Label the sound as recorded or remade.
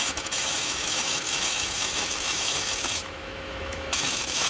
remade